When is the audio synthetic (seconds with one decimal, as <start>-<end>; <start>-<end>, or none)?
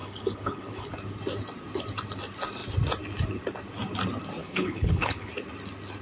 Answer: 0.0-0.9; 4.4-5.3